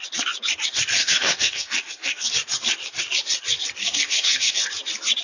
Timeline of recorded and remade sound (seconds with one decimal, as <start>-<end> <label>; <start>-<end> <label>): 0.0-1.0 recorded; 1.0-2.3 remade; 2.3-3.8 recorded; 3.8-4.6 remade; 4.6-5.2 recorded